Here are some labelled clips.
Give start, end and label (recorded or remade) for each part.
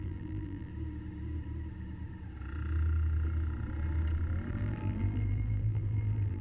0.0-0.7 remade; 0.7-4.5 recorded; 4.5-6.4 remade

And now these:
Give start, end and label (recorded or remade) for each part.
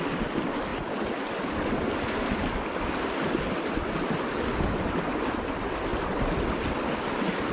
0.0-5.9 recorded; 5.9-7.1 remade; 7.1-7.5 recorded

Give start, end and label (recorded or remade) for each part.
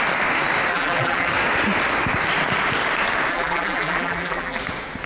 0.0-0.7 recorded; 0.7-1.3 remade; 1.3-3.3 recorded; 3.3-4.6 remade; 4.6-5.1 recorded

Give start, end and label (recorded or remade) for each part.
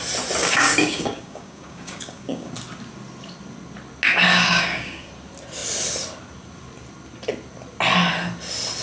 0.0-0.4 recorded; 0.4-2.5 remade; 2.5-4.3 recorded; 4.3-5.1 remade; 5.1-8.8 recorded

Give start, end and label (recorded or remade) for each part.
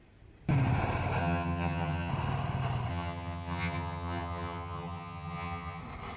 0.0-1.2 recorded; 1.2-2.1 remade; 2.1-2.9 recorded; 2.9-5.8 remade; 5.8-6.2 recorded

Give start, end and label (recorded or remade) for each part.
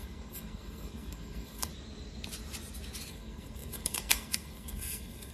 0.0-1.7 remade; 1.7-3.1 recorded; 3.1-5.3 remade